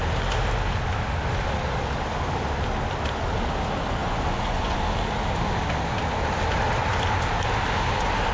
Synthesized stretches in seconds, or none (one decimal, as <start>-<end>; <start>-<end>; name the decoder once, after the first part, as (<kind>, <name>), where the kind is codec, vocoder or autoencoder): 4.0-4.8 (vocoder, Vocos)